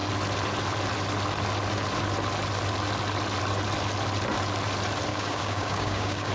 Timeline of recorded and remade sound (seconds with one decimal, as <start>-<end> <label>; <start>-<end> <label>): 0.0-5.1 recorded; 5.1-6.3 remade

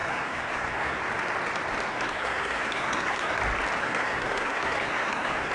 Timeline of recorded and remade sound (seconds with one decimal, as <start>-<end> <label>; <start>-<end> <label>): 0.0-1.0 remade; 1.0-1.9 recorded; 1.9-3.4 remade; 3.4-3.8 recorded; 3.8-5.5 remade

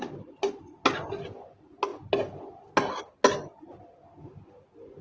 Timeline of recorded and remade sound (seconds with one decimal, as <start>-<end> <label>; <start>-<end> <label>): 0.0-5.0 recorded

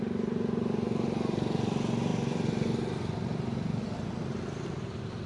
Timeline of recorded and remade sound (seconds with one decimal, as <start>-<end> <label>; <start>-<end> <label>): 0.0-5.3 recorded

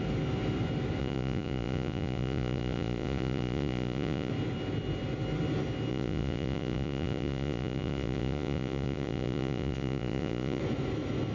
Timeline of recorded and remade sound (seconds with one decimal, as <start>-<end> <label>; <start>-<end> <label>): 0.0-1.0 recorded; 1.0-4.3 remade; 4.3-5.9 recorded; 5.9-10.6 remade; 10.6-11.3 recorded